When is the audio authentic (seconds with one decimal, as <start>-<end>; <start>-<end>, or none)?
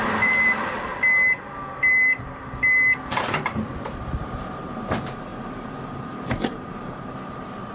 0.9-4.2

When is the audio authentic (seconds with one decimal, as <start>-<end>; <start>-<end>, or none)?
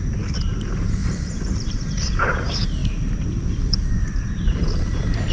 2.8-5.3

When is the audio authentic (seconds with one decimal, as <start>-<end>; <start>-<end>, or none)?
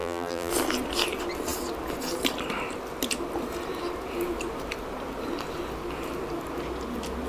0.5-7.3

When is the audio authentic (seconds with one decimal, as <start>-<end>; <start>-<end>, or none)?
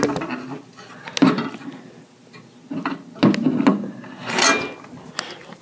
0.0-3.7; 4.2-5.6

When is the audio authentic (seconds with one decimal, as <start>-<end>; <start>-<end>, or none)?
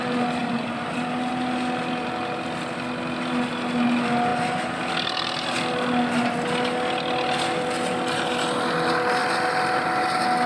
0.0-9.2; 9.8-10.5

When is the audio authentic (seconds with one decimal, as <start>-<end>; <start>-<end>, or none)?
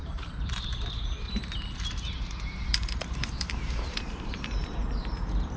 none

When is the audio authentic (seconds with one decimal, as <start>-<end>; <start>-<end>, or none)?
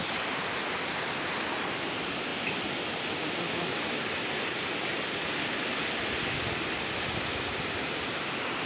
2.3-7.2